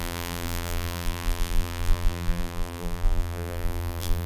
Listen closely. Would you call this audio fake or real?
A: fake